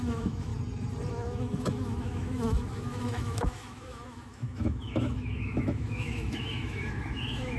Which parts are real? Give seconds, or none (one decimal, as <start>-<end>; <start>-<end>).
0.5-1.1